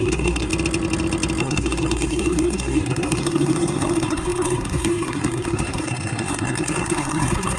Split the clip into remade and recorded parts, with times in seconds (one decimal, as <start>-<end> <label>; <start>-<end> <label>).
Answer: 0.0-0.5 remade; 0.5-1.4 recorded; 1.4-7.6 remade